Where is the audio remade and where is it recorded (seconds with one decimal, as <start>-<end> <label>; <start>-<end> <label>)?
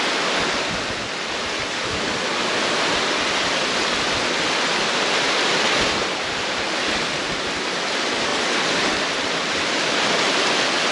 0.0-10.9 recorded